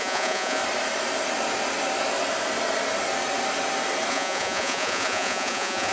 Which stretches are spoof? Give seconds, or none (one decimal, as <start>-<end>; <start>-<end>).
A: 0.0-0.6; 4.1-5.9